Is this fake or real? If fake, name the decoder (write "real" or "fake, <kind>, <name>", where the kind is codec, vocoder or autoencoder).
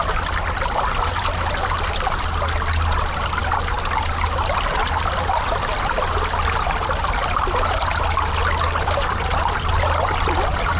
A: real